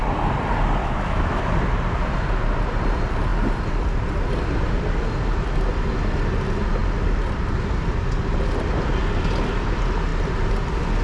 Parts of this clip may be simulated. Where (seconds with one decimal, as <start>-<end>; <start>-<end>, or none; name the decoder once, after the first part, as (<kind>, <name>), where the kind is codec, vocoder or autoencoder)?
0.8-1.4 (autoencoder, DAC-VAE)